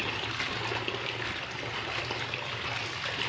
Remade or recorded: recorded